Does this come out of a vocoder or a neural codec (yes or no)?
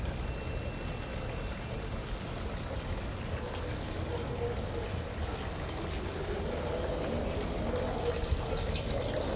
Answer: no